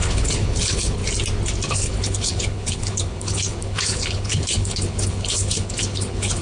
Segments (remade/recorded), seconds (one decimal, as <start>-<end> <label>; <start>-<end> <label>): 0.0-1.0 remade; 1.0-1.7 recorded; 1.7-6.4 remade